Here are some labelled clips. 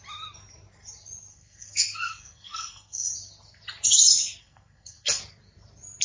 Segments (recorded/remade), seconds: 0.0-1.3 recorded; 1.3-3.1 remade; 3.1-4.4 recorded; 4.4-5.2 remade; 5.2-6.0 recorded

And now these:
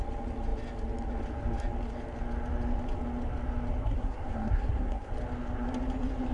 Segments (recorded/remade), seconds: 0.0-3.8 recorded; 3.8-5.1 remade; 5.1-6.3 recorded

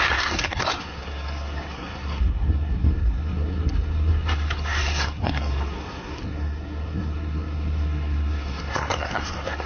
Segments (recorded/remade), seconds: 0.0-9.7 remade

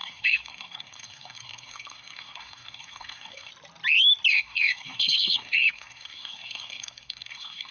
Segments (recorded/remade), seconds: 0.0-3.5 remade; 3.5-4.3 recorded; 4.3-7.7 remade

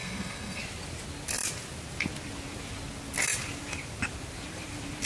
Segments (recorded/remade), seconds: 0.0-0.6 remade; 0.6-5.1 recorded

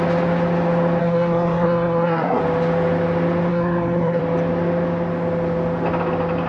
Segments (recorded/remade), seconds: 0.0-1.0 recorded; 1.0-2.4 remade; 2.4-3.5 recorded; 3.5-4.2 remade; 4.2-6.5 recorded